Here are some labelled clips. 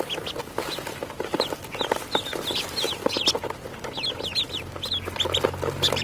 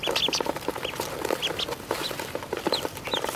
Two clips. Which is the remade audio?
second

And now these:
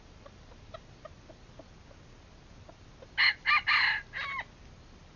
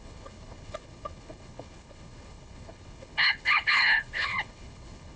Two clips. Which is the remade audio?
second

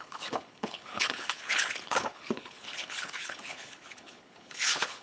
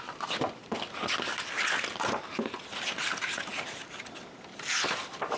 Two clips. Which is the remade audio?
first